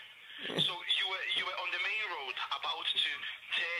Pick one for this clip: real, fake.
real